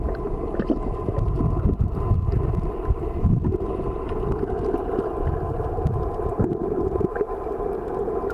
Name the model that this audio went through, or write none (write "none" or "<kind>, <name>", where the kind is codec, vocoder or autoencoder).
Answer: none